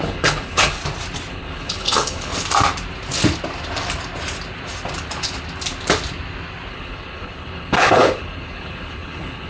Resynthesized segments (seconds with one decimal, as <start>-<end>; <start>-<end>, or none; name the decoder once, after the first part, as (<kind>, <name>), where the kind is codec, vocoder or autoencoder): 0.0-0.8 (codec, HILCodec); 1.3-2.3; 6.7-9.5